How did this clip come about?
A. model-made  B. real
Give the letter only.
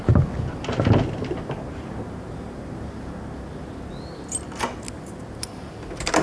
B